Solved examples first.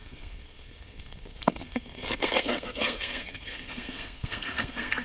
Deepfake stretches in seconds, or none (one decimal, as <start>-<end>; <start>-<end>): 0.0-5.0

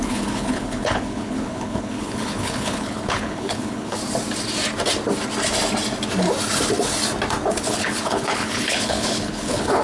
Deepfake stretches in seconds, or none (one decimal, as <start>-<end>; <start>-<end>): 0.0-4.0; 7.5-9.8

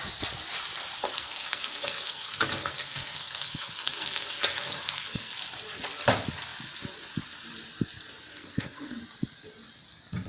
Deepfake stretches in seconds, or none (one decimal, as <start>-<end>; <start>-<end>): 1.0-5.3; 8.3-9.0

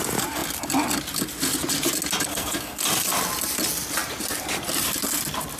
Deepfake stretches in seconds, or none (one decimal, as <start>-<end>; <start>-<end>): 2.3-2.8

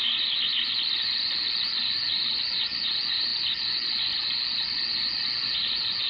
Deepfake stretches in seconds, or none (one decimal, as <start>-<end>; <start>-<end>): none

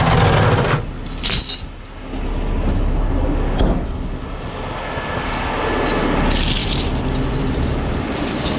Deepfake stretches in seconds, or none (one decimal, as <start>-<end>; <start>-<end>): 6.6-8.6

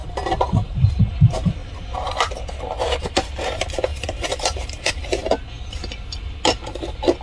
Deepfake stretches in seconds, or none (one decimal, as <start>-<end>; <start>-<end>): 0.0-1.0; 1.6-2.1; 3.9-4.9